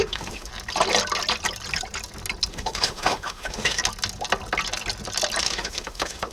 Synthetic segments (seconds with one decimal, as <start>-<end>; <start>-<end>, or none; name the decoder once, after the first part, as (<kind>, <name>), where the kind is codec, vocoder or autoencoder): 0.0-0.5 (autoencoder, DAC-VAE); 2.5-3.8; 5.4-6.3